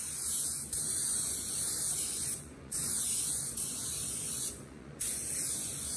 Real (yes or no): no